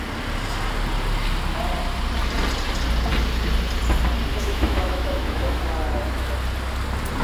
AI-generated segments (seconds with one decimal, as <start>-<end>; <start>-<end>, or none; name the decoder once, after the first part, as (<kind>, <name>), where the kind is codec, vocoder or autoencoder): 4.3-5.6 (autoencoder, DAC-VAE)